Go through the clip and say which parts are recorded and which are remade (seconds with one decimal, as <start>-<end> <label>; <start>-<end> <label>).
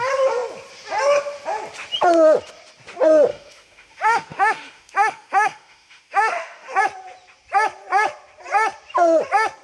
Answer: 0.0-3.3 recorded; 3.3-6.8 remade; 6.8-9.6 recorded